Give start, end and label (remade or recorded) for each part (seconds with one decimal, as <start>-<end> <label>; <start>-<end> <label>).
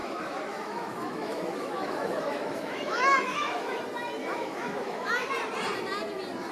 0.0-3.8 remade; 3.8-4.2 recorded; 4.2-5.1 remade; 5.1-6.5 recorded